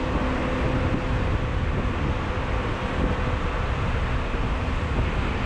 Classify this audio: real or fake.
real